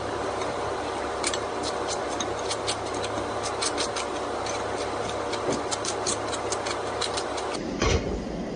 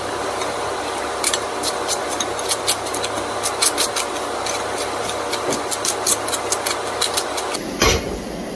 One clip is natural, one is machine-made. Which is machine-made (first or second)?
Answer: first